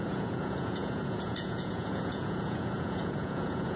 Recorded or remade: remade